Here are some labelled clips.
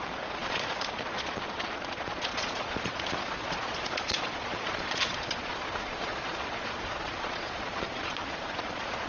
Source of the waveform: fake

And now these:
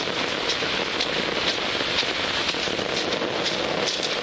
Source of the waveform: real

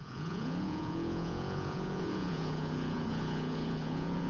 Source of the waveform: fake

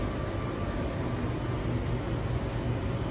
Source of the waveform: real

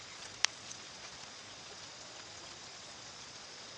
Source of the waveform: fake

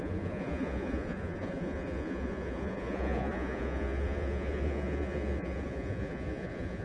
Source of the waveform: fake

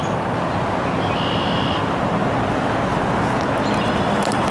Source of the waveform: real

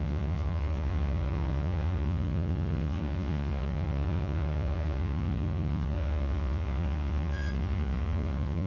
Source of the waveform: fake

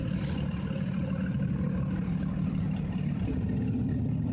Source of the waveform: real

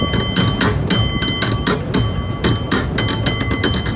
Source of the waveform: real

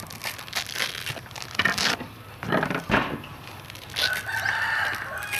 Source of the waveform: real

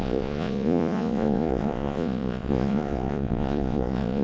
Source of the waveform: fake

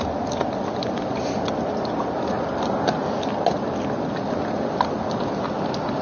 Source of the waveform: real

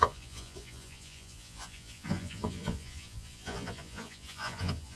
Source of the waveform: fake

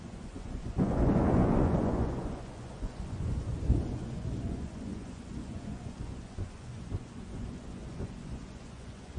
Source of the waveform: fake